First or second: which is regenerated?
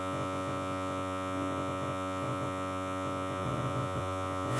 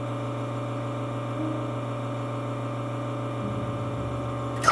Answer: first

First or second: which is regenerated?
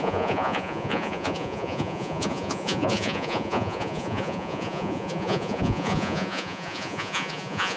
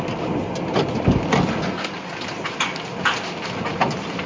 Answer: first